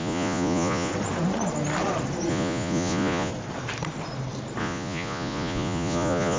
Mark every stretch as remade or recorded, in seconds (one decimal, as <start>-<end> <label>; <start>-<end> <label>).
0.0-0.9 remade; 0.9-2.3 recorded; 2.3-3.3 remade; 3.3-4.6 recorded; 4.6-6.4 remade